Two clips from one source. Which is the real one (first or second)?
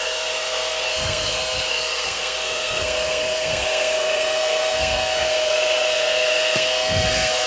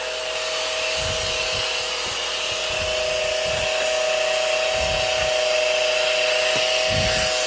second